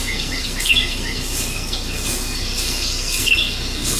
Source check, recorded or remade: remade